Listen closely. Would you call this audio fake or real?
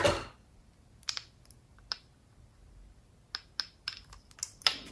real